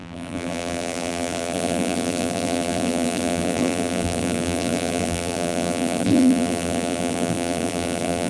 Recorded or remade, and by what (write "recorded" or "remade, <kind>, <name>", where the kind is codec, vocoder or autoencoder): remade, vocoder, BigVGAN v2